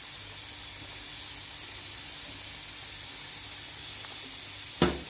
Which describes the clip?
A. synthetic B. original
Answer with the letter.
B